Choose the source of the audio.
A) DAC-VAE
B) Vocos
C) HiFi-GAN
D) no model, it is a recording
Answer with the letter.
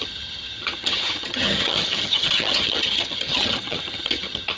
C